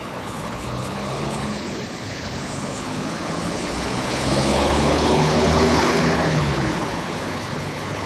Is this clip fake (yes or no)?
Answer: yes